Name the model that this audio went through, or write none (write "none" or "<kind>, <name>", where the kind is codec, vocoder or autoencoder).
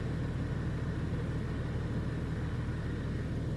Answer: none